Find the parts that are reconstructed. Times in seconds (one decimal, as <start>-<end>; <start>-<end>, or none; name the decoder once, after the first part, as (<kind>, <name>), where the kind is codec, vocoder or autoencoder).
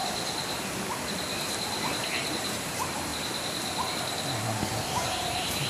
2.3-3.1 (vocoder, BigVGAN v2); 4.9-5.7